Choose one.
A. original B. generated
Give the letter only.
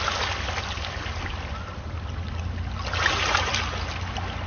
A